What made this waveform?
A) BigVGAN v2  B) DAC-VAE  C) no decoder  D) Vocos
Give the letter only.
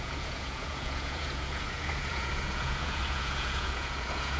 D